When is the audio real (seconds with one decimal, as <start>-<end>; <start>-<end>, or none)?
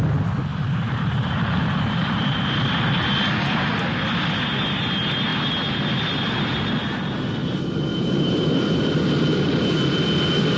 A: 0.0-0.5; 2.8-7.9; 8.9-10.6